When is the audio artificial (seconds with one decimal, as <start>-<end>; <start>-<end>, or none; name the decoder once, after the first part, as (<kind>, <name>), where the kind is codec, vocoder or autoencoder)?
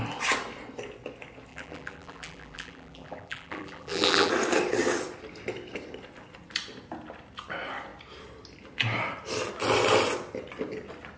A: 1.5-4.3 (vocoder, BigVGAN v2)